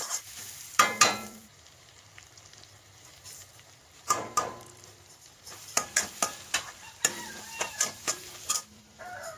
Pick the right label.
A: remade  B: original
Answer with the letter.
A